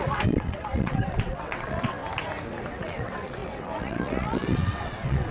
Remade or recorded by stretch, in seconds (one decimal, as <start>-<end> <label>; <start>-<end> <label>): 0.0-2.0 remade; 2.0-2.7 recorded; 2.7-5.3 remade